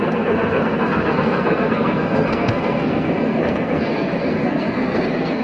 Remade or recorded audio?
remade